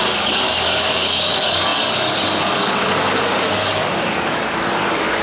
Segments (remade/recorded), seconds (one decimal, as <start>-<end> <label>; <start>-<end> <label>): 0.0-5.2 remade